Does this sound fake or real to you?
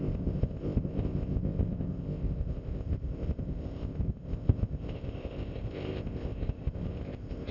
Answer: fake